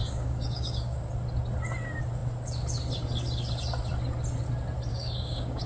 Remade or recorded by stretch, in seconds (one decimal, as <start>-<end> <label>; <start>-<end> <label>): 0.0-1.1 remade; 1.1-4.9 recorded; 4.9-5.7 remade

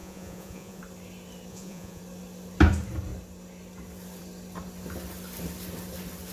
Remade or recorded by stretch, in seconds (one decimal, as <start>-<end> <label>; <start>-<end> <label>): 0.0-0.8 remade; 0.8-1.5 recorded; 1.5-2.0 remade; 2.0-6.3 recorded

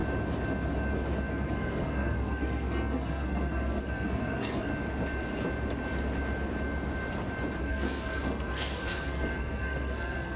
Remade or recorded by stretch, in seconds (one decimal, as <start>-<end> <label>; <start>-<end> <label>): 0.0-1.3 recorded; 1.3-4.7 remade; 4.7-7.6 recorded; 7.6-10.4 remade

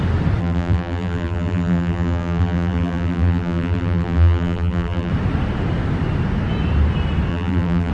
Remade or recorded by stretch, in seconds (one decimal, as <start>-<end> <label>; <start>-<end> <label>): 0.0-0.4 recorded; 0.4-5.1 remade; 5.1-7.3 recorded; 7.3-7.9 remade

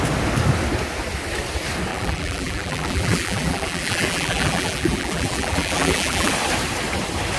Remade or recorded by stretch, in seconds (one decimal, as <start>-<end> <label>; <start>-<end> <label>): 0.0-1.9 recorded; 1.9-6.3 remade; 6.3-7.4 recorded

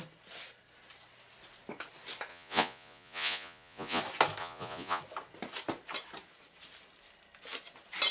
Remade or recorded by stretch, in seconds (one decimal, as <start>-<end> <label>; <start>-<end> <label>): 0.0-2.3 recorded; 2.3-4.0 remade; 4.0-4.4 recorded; 4.4-5.0 remade; 5.0-8.1 recorded